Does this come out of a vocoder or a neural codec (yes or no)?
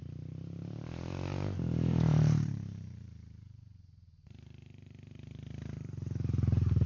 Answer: yes